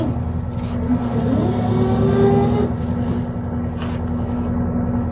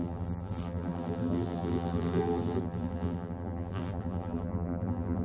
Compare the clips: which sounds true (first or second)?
first